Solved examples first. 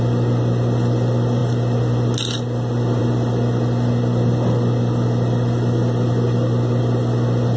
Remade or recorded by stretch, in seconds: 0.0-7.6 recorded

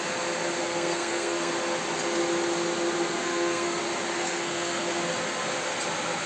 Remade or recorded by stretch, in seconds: 0.0-0.6 recorded; 0.6-1.5 remade; 1.5-3.2 recorded; 3.2-3.8 remade; 3.8-4.2 recorded; 4.2-5.0 remade; 5.0-6.3 recorded